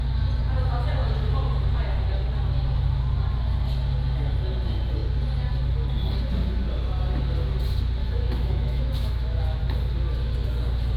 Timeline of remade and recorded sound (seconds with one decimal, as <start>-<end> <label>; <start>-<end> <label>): 0.0-8.0 recorded; 8.0-9.6 remade; 9.6-11.0 recorded

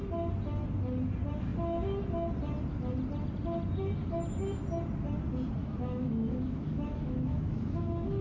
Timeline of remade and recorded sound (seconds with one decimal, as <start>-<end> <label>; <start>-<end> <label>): 0.0-5.6 recorded; 5.6-8.2 remade

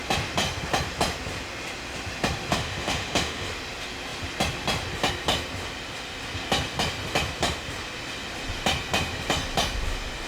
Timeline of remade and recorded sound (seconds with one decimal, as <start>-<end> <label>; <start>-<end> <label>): 0.0-2.5 recorded; 2.5-3.5 remade; 3.5-10.3 recorded

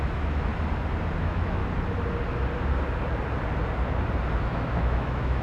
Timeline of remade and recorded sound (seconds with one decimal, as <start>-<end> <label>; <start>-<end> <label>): 0.0-0.5 remade; 0.5-1.2 recorded; 1.2-1.6 remade; 1.6-4.4 recorded; 4.4-5.4 remade

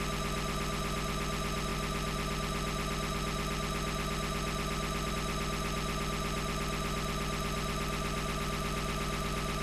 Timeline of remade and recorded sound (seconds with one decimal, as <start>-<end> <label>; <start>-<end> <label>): 0.0-9.6 recorded

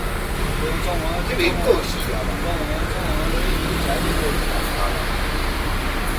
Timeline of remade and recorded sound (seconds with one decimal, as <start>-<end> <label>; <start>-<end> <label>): 0.0-6.2 recorded